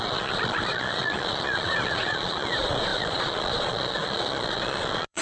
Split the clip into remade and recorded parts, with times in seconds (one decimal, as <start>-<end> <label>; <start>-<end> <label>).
0.0-5.2 remade

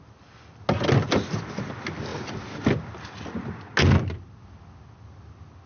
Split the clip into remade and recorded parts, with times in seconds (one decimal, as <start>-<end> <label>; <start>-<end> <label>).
0.0-5.7 recorded

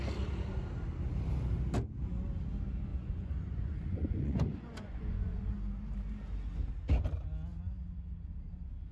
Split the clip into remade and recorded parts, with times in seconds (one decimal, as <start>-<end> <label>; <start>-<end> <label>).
0.0-2.9 recorded; 2.9-5.5 remade; 5.5-8.9 recorded

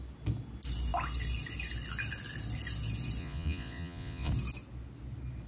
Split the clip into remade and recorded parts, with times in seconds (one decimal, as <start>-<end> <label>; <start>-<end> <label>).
0.0-3.2 recorded; 3.2-4.3 remade; 4.3-5.5 recorded

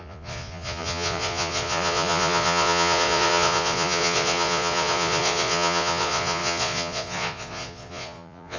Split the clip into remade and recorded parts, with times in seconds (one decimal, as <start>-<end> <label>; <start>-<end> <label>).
0.0-8.6 remade

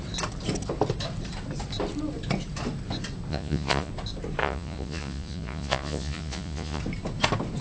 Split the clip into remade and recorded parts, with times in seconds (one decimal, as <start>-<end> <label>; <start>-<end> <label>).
0.0-3.3 recorded; 3.3-3.9 remade; 3.9-4.4 recorded; 4.4-6.8 remade; 6.8-7.6 recorded